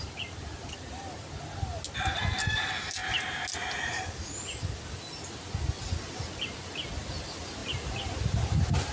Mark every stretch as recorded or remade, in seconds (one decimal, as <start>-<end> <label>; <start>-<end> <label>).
0.0-8.9 recorded